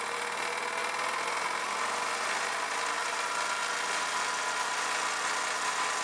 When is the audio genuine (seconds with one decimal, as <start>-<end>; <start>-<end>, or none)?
0.0-6.0